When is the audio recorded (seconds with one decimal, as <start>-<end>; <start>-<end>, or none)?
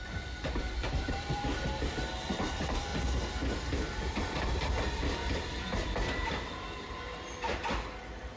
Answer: 2.9-4.0